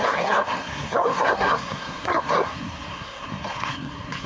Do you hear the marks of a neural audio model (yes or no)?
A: yes